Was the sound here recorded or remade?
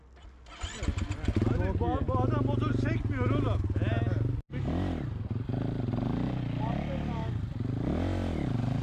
recorded